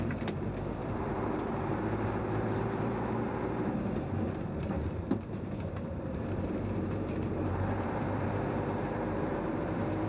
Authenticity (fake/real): fake